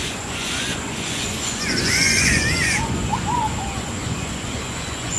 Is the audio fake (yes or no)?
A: yes